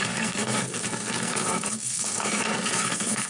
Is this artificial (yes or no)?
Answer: yes